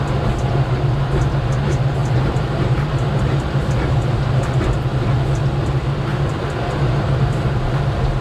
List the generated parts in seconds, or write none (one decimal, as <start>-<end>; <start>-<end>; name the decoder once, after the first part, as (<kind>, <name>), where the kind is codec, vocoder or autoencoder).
2.0-4.7 (vocoder, BigVGAN v2); 6.1-8.2